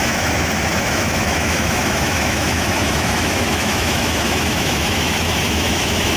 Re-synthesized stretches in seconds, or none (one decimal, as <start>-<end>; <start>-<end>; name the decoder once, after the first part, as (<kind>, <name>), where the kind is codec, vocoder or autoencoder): 0.0-6.2 (autoencoder, DAC-VAE)